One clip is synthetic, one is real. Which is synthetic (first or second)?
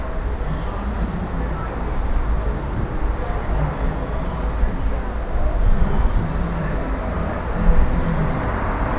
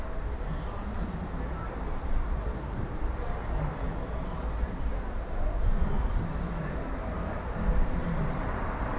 second